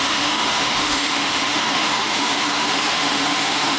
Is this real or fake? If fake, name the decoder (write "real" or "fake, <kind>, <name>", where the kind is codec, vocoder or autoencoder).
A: fake, autoencoder, DAC-VAE